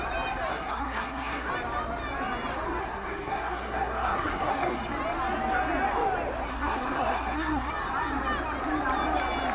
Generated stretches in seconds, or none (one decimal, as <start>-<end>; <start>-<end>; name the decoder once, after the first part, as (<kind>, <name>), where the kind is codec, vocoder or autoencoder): 0.5-1.5 (codec, SNAC); 2.8-4.8; 6.5-7.7